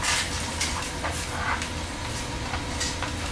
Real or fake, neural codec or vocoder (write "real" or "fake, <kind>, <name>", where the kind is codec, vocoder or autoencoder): real